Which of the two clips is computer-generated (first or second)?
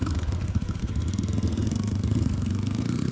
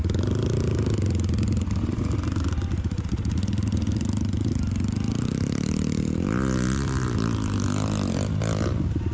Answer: first